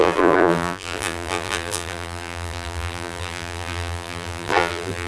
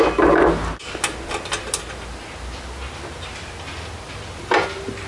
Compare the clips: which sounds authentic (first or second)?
second